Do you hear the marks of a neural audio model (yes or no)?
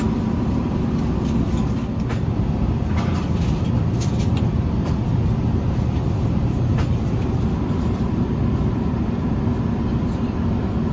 no